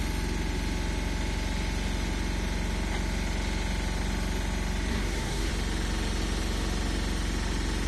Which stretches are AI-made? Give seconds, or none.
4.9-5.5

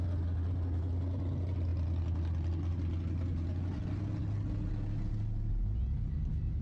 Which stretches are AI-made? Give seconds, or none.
none

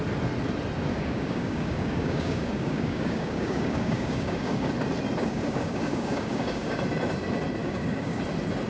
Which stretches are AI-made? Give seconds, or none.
0.9-4.7; 5.2-6.8; 7.6-8.2